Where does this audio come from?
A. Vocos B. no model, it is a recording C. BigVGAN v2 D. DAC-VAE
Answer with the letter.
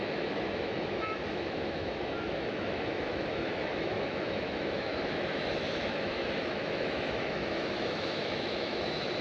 D